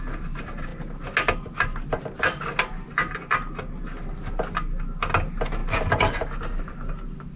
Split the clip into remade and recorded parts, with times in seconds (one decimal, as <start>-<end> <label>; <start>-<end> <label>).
0.0-7.4 recorded